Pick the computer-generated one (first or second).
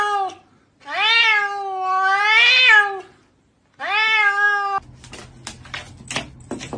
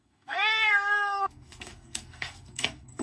second